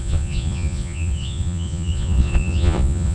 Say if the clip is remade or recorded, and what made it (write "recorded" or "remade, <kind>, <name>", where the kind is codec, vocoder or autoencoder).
remade, vocoder, Vocos